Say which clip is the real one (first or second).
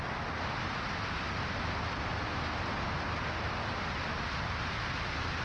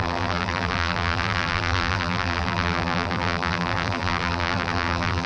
first